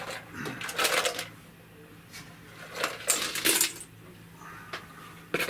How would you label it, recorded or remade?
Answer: recorded